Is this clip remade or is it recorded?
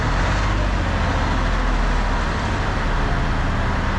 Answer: recorded